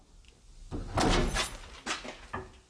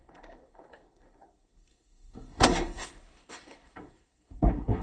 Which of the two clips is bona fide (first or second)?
first